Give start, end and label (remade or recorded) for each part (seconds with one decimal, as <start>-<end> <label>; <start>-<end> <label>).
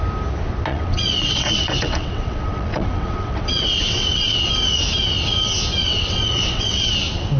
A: 0.0-0.7 recorded; 0.7-4.5 remade; 4.5-5.8 recorded; 5.8-6.9 remade; 6.9-7.4 recorded